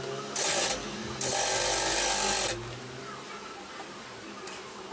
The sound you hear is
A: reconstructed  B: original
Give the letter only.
B